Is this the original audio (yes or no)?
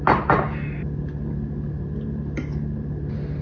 yes